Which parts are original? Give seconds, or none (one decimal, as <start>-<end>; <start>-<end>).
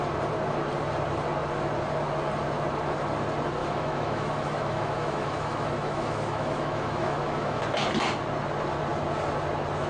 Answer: 0.0-3.6; 7.6-9.9